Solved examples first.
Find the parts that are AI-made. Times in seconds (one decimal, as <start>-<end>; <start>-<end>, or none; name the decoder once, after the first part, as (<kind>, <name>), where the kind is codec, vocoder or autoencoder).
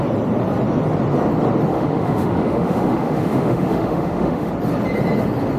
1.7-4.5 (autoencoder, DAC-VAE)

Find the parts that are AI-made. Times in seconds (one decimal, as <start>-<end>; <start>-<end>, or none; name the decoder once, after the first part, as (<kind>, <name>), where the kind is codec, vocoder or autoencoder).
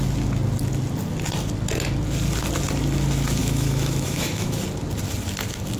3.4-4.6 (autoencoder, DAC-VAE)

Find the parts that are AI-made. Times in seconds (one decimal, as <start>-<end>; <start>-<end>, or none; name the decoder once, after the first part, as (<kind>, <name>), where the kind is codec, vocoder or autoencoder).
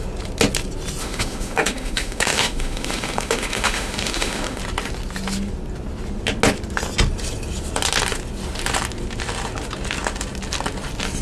1.0-4.6 (autoencoder, DAC-VAE)